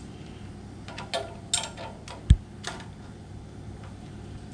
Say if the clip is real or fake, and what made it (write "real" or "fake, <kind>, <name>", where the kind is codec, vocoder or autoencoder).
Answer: real